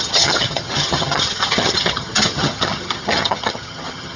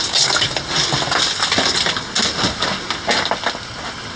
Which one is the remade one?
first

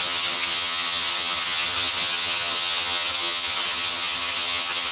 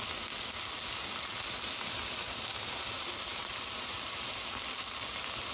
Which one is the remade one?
first